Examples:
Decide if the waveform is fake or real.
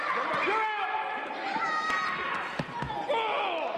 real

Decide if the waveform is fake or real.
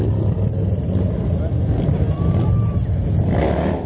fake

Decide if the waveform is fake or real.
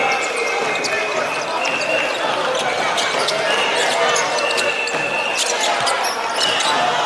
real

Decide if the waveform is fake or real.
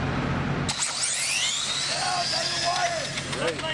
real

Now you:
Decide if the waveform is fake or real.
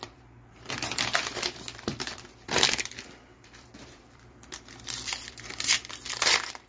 fake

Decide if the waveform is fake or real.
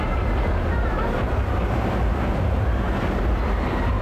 real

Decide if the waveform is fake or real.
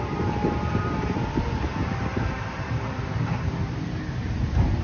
fake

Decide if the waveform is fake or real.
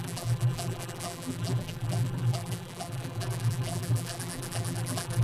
fake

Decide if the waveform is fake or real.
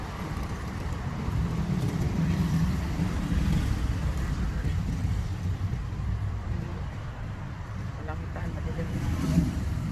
fake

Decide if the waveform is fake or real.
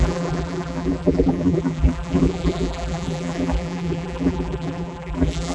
fake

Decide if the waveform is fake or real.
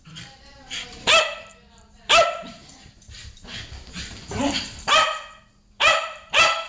fake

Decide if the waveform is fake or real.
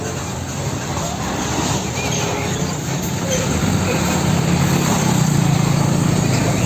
fake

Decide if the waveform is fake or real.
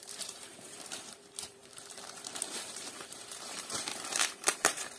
fake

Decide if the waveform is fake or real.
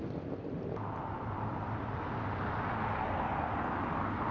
real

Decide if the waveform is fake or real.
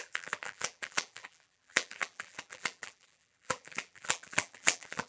fake